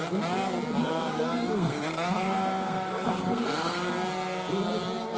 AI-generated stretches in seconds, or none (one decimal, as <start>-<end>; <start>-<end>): 0.8-3.9